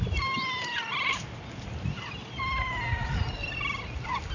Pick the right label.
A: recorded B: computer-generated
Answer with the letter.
A